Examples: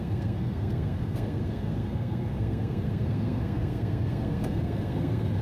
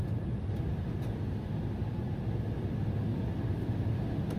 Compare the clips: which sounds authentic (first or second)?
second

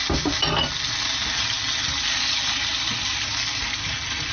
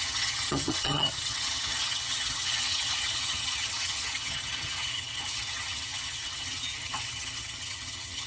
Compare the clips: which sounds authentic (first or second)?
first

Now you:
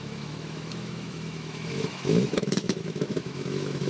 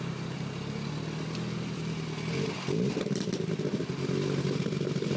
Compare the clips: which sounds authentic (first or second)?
second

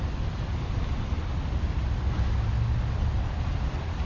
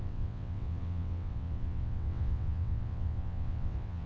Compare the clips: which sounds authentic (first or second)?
first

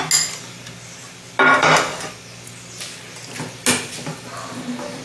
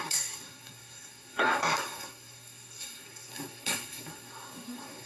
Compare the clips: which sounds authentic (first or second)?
first